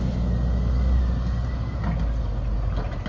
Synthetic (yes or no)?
no